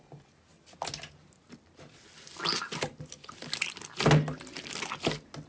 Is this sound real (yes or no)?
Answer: yes